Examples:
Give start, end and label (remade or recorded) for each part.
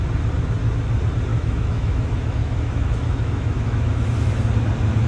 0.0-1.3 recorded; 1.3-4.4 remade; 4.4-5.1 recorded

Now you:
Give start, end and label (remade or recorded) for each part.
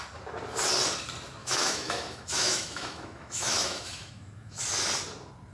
0.0-1.4 recorded; 1.4-4.6 remade; 4.6-5.5 recorded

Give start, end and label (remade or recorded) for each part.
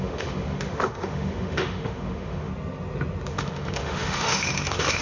0.0-2.5 remade; 2.5-3.3 recorded; 3.3-5.0 remade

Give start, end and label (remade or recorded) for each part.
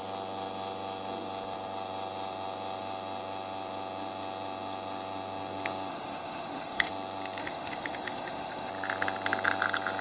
0.0-5.9 recorded; 5.9-6.9 remade; 6.9-7.4 recorded; 7.4-8.7 remade; 8.7-10.0 recorded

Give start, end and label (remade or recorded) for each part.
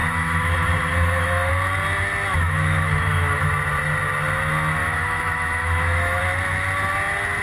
0.0-1.5 remade; 1.5-2.3 recorded; 2.3-3.5 remade; 3.5-4.8 recorded; 4.8-6.2 remade; 6.2-7.4 recorded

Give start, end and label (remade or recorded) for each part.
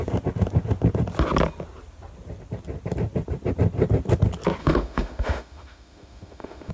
0.0-4.6 recorded; 4.6-6.7 remade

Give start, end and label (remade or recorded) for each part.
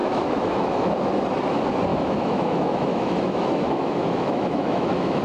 0.0-0.9 remade; 0.9-1.9 recorded; 1.9-5.2 remade